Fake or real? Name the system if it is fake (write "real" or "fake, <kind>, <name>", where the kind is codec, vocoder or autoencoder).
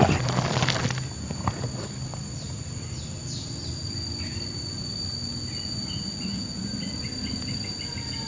real